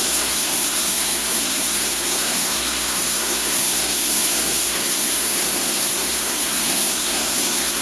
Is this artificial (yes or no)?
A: yes